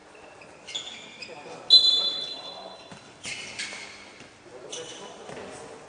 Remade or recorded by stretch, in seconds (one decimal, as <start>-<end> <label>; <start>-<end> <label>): 0.0-5.9 recorded